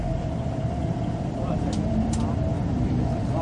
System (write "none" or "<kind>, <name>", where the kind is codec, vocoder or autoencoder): vocoder, BigVGAN v2